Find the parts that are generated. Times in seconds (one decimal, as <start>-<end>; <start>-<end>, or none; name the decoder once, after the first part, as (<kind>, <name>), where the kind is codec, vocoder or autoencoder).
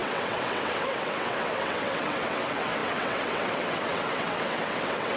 0.0-5.2 (vocoder, WaveNeXt)